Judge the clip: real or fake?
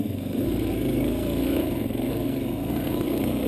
fake